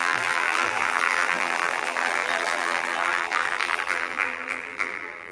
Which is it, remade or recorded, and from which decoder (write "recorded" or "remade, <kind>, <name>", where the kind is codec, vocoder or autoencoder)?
remade, vocoder, BigVGAN v2